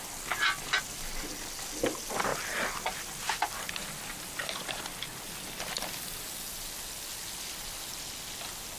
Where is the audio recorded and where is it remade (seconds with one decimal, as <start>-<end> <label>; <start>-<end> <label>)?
0.0-8.8 recorded